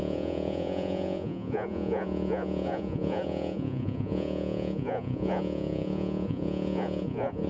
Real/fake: fake